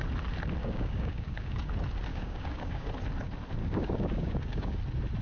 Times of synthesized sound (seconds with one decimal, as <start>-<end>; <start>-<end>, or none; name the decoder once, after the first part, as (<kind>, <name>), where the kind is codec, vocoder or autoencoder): 0.6-1.7 (codec, DAC); 2.1-2.9; 3.6-4.8